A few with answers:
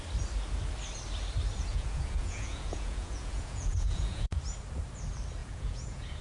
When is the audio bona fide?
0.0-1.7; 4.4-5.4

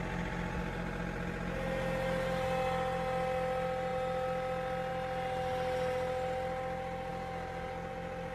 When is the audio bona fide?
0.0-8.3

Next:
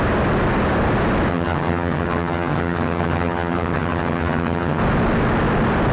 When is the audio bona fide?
0.0-1.3; 4.8-5.9

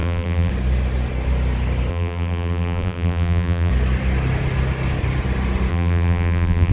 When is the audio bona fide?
0.5-1.9; 3.7-5.7

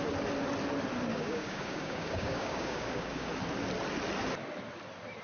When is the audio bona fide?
0.0-1.1; 3.3-5.2

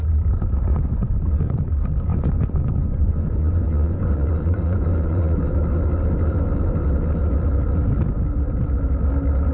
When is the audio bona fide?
0.0-0.7; 1.7-2.1; 5.4-9.5